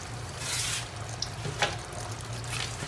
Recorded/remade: recorded